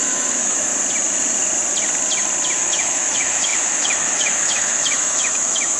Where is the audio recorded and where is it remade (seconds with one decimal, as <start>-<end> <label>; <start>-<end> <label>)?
0.0-0.7 remade; 0.7-2.6 recorded; 2.6-5.8 remade